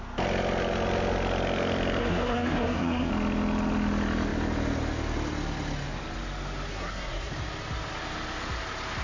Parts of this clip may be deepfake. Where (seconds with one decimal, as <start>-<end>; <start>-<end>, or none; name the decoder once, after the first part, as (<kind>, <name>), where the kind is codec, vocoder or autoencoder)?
2.0-3.1 (codec, SNAC); 6.7-7.3